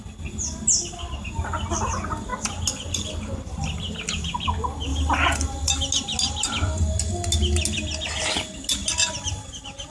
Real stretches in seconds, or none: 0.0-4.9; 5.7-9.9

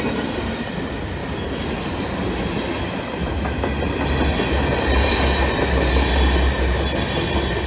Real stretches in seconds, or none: 0.0-7.7

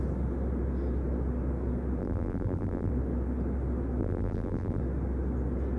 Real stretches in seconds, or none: 0.0-2.0; 2.9-4.0; 4.8-5.8

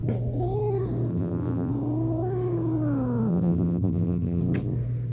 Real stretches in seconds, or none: 0.0-1.1; 1.7-3.3; 4.4-5.1

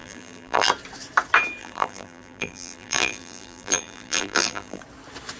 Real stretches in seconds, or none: 0.7-1.6; 4.8-5.4

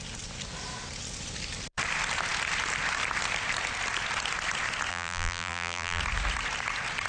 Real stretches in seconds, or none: 0.0-4.9; 6.0-7.1

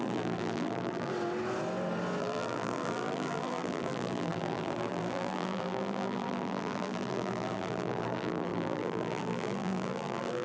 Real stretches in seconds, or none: 1.1-2.2